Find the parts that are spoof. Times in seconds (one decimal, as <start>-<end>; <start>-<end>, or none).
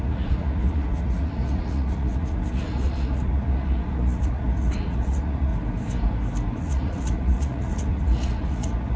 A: 0.0-5.5; 6.6-9.0